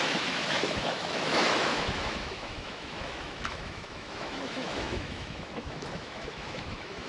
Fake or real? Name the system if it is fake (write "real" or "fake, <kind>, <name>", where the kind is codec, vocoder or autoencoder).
fake, autoencoder, DAC-VAE